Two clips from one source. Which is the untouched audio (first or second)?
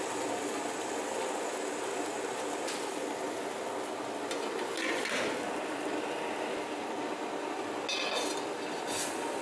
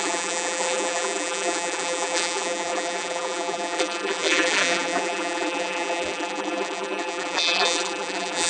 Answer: first